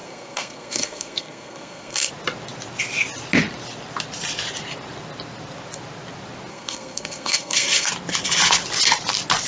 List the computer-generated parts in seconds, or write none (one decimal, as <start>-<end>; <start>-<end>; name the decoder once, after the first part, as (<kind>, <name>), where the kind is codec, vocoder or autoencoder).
0.0-2.1 (codec, SNAC); 6.5-7.9